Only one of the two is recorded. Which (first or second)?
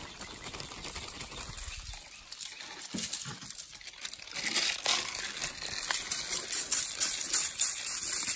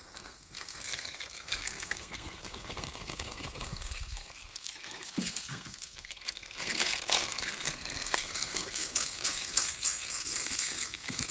first